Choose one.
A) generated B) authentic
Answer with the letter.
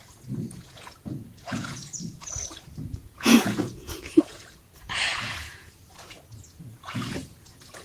A